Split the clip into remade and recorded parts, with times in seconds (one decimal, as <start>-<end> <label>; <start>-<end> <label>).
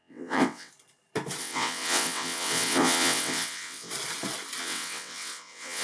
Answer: 0.0-0.7 remade; 0.7-1.4 recorded; 1.4-3.9 remade; 3.9-4.6 recorded; 4.6-5.8 remade